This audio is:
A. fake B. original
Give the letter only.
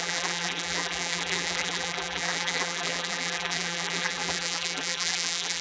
A